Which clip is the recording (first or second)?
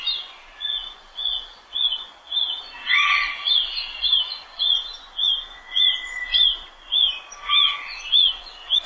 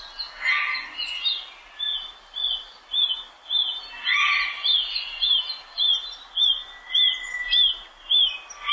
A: second